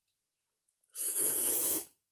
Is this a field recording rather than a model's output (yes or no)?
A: no